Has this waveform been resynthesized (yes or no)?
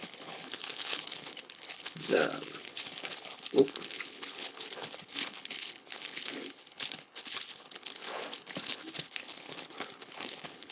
yes